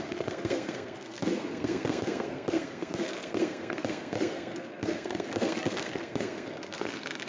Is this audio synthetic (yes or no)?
yes